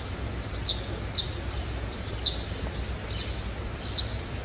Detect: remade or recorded recorded